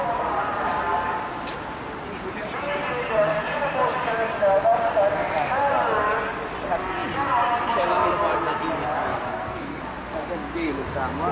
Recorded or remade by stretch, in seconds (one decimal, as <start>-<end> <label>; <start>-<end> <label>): 0.0-9.1 recorded; 9.1-9.8 remade; 9.8-11.3 recorded

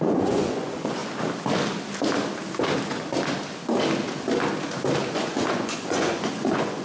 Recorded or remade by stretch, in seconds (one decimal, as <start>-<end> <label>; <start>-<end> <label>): 0.0-1.0 remade; 1.0-5.1 recorded; 5.1-6.8 remade

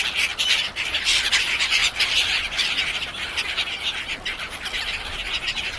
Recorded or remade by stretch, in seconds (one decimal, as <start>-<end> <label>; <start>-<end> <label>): 0.0-1.3 recorded; 1.3-1.8 remade; 1.8-5.3 recorded; 5.3-5.8 remade

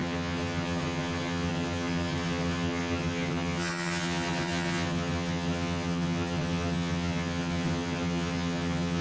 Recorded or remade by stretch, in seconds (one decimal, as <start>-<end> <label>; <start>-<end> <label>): 0.0-9.0 remade

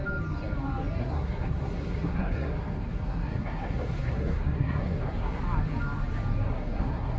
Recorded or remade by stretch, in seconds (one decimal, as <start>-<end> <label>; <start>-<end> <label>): 0.0-1.0 recorded; 1.0-5.4 remade; 5.4-6.5 recorded; 6.5-7.2 remade